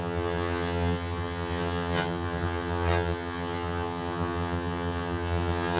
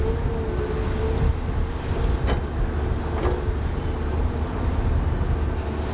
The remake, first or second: first